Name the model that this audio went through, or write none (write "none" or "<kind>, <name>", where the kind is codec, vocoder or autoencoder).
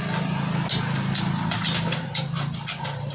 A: none